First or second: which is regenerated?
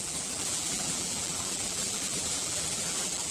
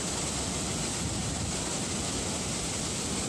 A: first